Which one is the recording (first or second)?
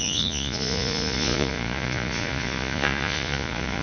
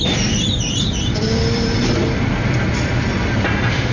second